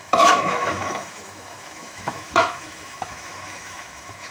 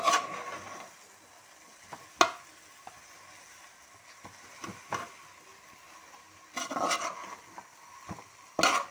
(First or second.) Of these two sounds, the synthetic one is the first